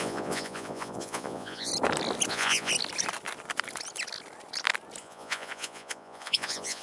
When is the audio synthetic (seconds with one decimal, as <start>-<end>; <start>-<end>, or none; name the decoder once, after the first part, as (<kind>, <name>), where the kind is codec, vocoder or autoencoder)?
0.0-1.7 (vocoder, Vocos); 2.3-2.7; 5.0-6.8